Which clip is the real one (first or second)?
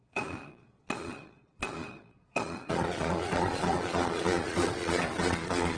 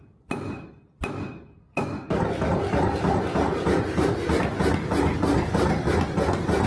second